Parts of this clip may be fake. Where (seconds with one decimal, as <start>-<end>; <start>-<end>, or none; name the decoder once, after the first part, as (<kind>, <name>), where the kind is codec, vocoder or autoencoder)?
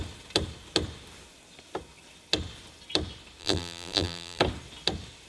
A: 3.4-4.4 (vocoder, BigVGAN v2)